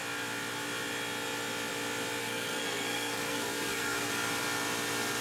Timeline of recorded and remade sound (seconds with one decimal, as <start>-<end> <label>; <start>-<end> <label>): 0.0-2.2 recorded; 2.2-4.1 remade; 4.1-5.2 recorded